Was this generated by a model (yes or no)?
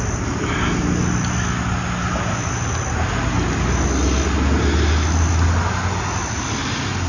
no